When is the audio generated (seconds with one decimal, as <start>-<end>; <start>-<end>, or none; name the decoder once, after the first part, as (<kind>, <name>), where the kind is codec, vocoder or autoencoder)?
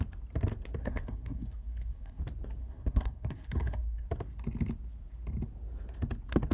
0.8-2.2 (codec, SNAC); 2.6-4.1